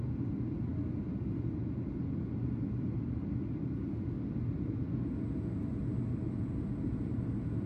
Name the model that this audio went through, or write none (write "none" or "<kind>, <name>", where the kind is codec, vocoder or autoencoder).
none